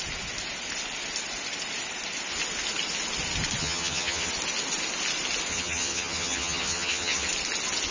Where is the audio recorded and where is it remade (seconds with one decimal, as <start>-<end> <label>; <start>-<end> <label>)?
0.0-3.6 recorded; 3.6-4.3 remade; 4.3-5.5 recorded; 5.5-7.3 remade; 7.3-7.9 recorded